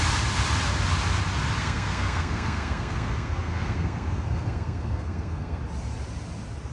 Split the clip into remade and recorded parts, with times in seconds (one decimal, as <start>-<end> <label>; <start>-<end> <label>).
0.0-1.6 recorded; 1.6-5.6 remade; 5.6-6.7 recorded